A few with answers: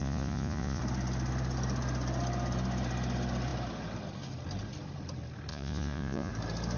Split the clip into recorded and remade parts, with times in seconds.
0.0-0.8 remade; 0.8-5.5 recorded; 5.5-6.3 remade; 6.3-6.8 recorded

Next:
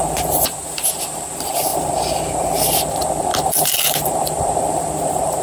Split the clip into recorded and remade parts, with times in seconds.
0.0-5.4 remade

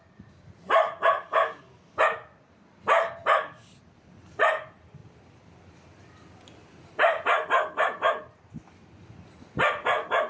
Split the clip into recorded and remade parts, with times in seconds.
0.0-10.3 recorded

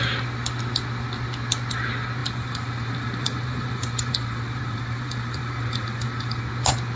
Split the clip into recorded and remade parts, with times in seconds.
0.0-2.2 recorded; 2.2-6.4 remade; 6.4-7.0 recorded

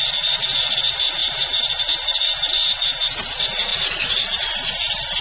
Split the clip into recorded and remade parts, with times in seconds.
0.0-3.7 recorded; 3.7-4.7 remade; 4.7-5.2 recorded

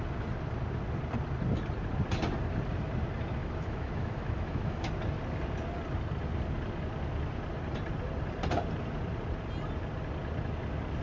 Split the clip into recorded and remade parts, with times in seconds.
0.0-3.4 recorded; 3.4-4.9 remade; 4.9-11.0 recorded